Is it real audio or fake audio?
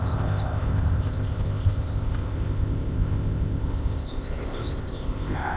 fake